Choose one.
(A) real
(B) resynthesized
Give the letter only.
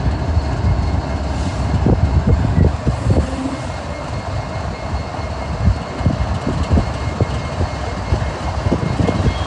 A